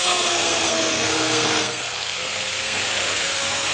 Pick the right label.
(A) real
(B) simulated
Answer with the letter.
B